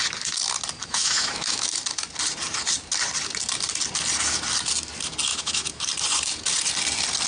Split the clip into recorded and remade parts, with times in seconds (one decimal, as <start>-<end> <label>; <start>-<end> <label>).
0.0-0.8 recorded; 0.8-1.7 remade; 1.7-5.3 recorded; 5.3-5.9 remade; 5.9-7.3 recorded